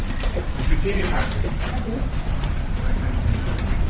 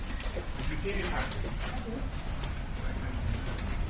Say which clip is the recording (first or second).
second